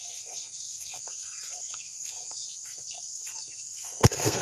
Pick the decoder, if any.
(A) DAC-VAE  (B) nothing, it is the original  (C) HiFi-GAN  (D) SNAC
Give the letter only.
D